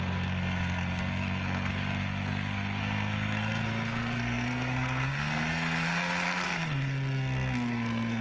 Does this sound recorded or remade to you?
remade